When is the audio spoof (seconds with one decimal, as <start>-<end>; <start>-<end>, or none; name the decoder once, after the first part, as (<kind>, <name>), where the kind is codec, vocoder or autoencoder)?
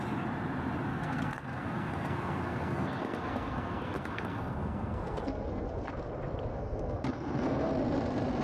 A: 0.9-5.9 (codec, SNAC); 6.5-7.7